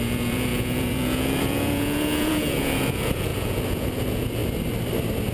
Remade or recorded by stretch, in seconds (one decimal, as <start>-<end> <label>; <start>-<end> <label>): 0.0-4.4 remade; 4.4-5.3 recorded